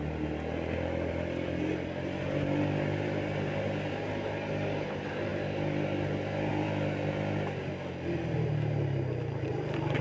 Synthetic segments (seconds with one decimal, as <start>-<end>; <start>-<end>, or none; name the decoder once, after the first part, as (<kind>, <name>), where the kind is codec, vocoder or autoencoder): none